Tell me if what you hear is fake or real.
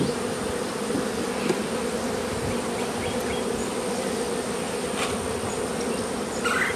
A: real